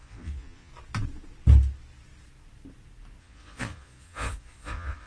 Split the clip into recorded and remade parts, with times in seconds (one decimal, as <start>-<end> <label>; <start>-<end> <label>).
0.0-0.7 remade; 0.7-3.2 recorded; 3.2-5.1 remade